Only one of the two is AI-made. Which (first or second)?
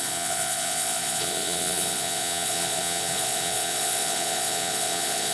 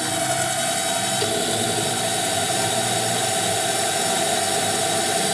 first